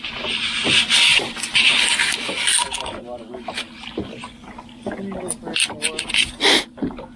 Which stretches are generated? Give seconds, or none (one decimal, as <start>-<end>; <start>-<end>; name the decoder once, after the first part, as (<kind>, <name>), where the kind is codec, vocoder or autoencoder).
none